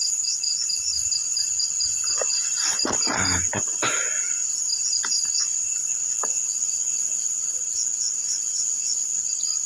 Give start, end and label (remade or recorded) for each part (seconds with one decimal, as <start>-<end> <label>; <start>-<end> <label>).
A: 0.0-5.9 recorded; 5.9-9.2 remade; 9.2-9.7 recorded